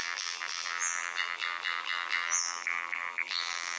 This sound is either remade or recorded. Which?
remade